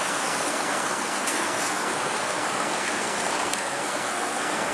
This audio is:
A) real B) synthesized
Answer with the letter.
B